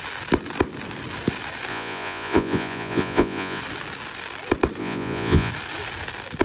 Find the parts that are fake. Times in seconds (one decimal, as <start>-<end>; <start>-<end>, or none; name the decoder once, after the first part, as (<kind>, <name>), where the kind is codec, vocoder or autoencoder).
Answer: 1.7-3.6 (vocoder, Vocos); 4.8-5.5